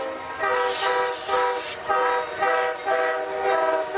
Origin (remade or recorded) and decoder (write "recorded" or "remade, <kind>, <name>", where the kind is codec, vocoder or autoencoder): recorded